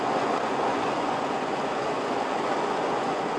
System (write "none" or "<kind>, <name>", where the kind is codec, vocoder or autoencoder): vocoder, Vocos